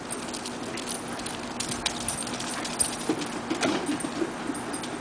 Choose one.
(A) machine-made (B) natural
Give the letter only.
A